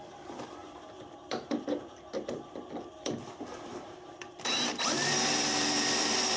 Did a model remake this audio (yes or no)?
yes